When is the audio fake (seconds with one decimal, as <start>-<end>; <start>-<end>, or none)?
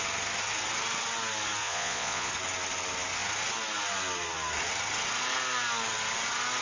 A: 1.6-2.3